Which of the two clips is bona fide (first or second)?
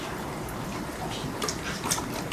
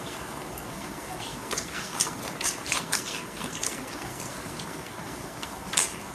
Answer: first